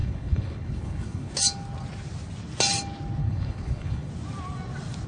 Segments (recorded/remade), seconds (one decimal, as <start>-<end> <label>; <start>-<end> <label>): 0.0-1.3 remade; 1.3-3.2 recorded; 3.2-4.1 remade; 4.1-5.1 recorded